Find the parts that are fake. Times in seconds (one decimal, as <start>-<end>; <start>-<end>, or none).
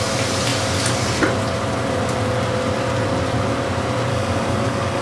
4.1-5.0